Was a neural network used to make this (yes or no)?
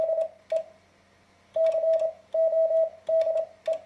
no